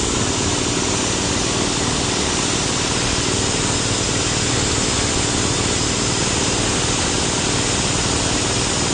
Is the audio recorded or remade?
recorded